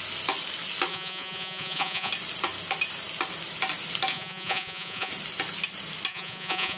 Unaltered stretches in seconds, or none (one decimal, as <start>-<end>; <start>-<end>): 0.0-0.9; 2.1-4.1; 5.1-6.1